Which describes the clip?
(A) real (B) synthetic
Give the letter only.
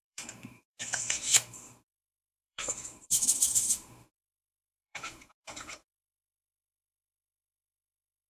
B